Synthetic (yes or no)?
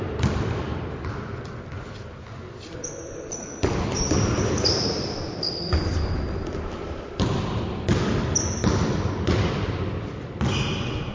no